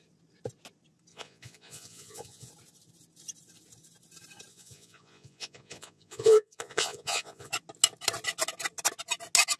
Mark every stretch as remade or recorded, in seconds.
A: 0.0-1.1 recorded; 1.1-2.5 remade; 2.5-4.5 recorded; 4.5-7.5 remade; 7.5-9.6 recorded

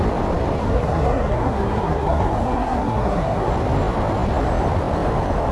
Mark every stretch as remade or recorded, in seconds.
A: 0.0-0.6 recorded; 0.6-3.5 remade; 3.5-5.5 recorded

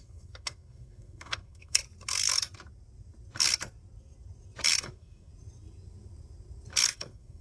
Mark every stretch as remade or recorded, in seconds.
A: 0.0-1.8 remade; 1.8-4.8 recorded; 4.8-5.3 remade; 5.3-6.8 recorded; 6.8-7.4 remade

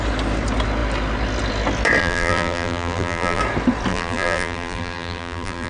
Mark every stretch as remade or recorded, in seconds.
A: 0.0-2.0 recorded; 2.0-3.4 remade; 3.4-3.9 recorded; 3.9-5.7 remade

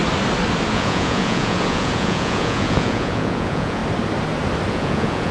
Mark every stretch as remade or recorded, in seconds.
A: 0.0-0.7 recorded; 0.7-3.8 remade; 3.8-4.7 recorded; 4.7-5.3 remade

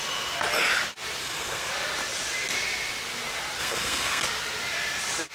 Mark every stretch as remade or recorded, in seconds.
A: 0.0-1.2 recorded; 1.2-1.7 remade; 1.7-3.6 recorded; 3.6-4.2 remade; 4.2-5.3 recorded

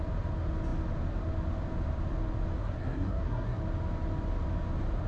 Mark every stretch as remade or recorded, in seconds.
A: 0.0-2.6 recorded; 2.6-3.6 remade; 3.6-5.1 recorded

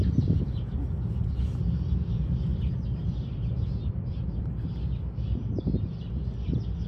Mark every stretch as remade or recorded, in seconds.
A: 0.0-2.5 recorded; 2.5-4.5 remade; 4.5-6.9 recorded